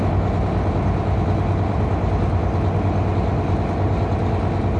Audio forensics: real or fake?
real